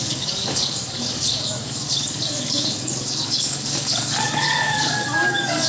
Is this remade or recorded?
remade